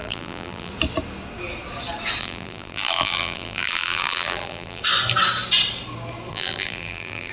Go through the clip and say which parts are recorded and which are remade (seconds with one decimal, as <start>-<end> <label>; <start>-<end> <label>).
0.0-0.7 remade; 0.7-2.2 recorded; 2.2-4.8 remade; 4.8-6.3 recorded; 6.3-7.3 remade